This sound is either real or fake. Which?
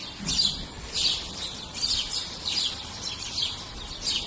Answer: real